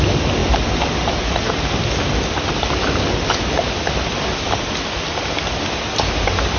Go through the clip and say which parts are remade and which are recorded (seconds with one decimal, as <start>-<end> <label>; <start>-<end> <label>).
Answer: 0.0-6.6 recorded